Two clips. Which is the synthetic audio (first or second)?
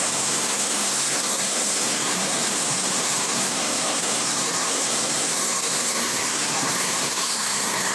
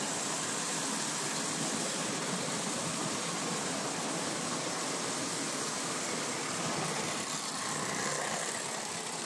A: first